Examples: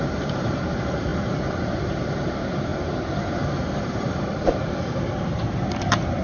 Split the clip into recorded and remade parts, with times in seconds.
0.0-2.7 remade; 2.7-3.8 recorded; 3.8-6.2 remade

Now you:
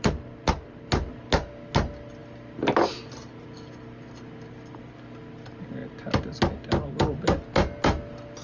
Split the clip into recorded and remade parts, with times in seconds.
0.0-8.4 recorded

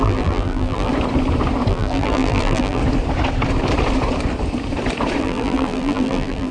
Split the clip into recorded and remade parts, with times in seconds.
0.0-0.9 remade; 0.9-1.7 recorded; 1.7-2.8 remade; 2.8-5.2 recorded; 5.2-6.5 remade

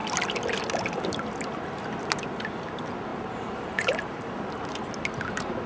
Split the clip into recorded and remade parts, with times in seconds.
0.0-3.1 recorded; 3.1-4.4 remade; 4.4-5.7 recorded